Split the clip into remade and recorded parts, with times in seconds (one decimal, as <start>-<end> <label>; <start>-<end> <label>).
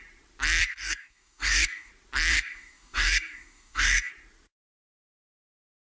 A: 0.0-0.6 recorded; 0.6-1.9 remade; 1.9-2.3 recorded; 2.3-4.1 remade; 4.1-5.9 recorded